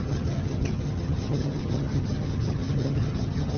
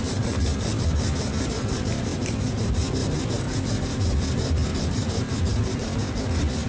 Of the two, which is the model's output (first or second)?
first